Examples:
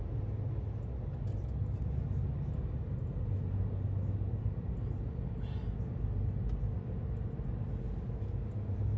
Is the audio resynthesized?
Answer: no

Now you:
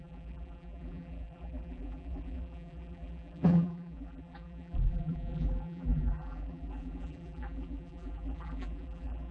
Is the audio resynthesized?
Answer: yes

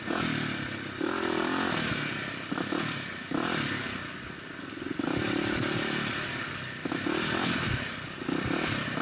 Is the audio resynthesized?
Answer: no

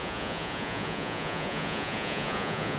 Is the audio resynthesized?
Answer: yes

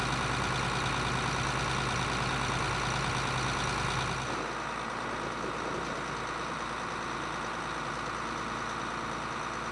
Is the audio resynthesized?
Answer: no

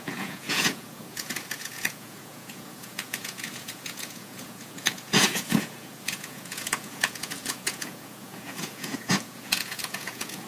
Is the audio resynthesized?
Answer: yes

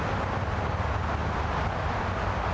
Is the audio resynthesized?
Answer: no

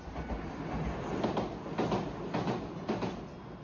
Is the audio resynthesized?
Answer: no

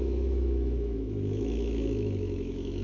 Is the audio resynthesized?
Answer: yes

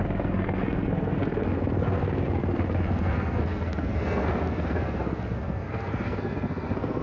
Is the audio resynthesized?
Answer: yes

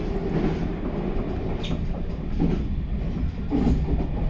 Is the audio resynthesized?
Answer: no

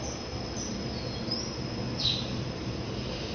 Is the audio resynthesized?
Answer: no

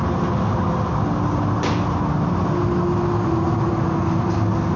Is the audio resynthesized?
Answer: no